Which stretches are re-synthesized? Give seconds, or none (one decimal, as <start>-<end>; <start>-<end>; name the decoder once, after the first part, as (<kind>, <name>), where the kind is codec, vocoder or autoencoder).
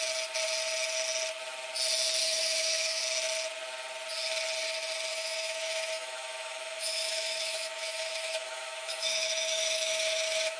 2.2-3.0 (autoencoder, DAC-VAE); 5.1-10.6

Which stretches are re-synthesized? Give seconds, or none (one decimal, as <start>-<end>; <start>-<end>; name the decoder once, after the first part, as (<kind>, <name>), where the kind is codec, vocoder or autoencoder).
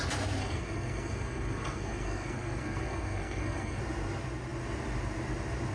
0.4-3.8 (codec, SNAC)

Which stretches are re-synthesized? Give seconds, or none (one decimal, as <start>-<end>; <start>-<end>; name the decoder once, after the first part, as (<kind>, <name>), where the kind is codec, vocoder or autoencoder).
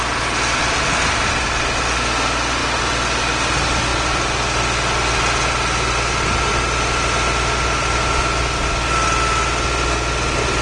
2.6-3.2 (vocoder, BigVGAN v2)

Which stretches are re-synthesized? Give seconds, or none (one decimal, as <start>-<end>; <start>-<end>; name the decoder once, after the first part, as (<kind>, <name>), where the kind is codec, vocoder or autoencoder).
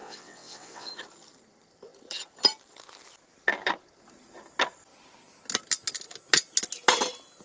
0.0-0.9 (vocoder, WaveNeXt)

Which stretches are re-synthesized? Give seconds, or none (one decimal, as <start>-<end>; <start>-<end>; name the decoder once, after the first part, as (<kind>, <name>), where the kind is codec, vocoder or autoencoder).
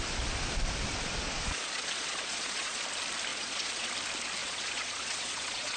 0.9-2.8 (vocoder, Vocos); 3.3-3.9; 4.4-5.8